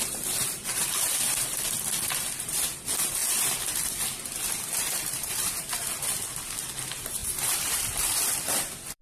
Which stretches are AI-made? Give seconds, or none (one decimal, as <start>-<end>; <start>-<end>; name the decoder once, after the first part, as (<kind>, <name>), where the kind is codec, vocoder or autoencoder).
0.0-0.6 (vocoder, BigVGAN v2); 2.4-3.2; 4.4-9.0

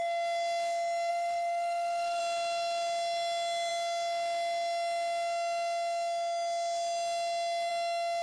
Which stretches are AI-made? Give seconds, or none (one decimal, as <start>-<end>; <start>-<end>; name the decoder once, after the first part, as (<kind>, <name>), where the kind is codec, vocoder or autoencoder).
1.1-2.2 (vocoder, BigVGAN v2)

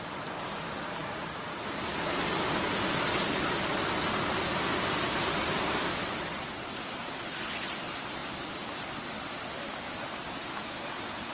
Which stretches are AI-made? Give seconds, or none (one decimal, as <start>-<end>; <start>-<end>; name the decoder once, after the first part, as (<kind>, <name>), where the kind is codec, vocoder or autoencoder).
none

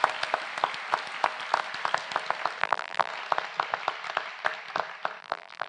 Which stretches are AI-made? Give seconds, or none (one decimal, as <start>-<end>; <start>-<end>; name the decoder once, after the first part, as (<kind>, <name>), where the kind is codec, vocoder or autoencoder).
2.6-3.1 (vocoder, BigVGAN v2); 5.2-5.7

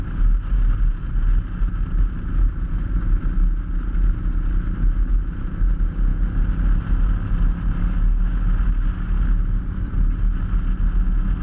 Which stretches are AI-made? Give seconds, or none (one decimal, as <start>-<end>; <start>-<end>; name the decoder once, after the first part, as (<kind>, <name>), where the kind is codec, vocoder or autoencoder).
none